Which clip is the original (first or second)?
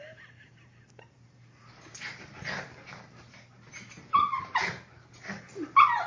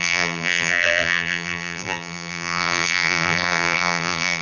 first